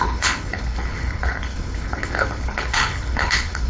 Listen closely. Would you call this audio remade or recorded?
remade